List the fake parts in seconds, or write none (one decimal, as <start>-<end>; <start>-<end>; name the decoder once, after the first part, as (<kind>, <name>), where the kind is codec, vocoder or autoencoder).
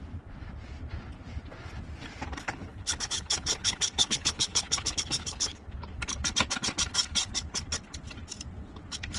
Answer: 2.4-6.0 (codec, HILCodec)